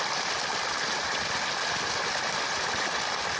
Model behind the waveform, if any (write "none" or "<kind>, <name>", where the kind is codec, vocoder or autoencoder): none